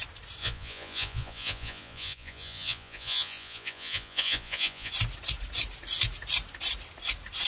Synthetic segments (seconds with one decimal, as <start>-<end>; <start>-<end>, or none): 0.4-4.9